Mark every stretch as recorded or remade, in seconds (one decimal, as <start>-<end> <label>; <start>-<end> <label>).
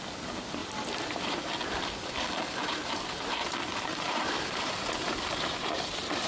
0.0-0.6 recorded; 0.6-1.5 remade; 1.5-3.9 recorded; 3.9-5.7 remade; 5.7-6.3 recorded